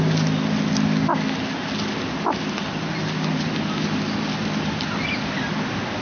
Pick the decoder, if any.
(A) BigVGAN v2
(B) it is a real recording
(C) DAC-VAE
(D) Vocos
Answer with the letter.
B